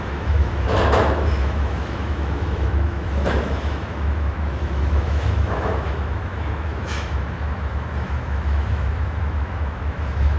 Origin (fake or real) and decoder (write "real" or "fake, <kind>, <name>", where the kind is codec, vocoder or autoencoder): fake, autoencoder, DAC-VAE